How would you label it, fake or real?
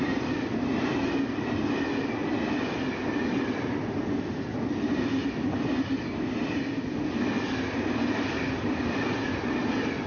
real